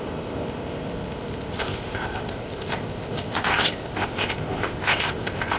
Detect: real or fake fake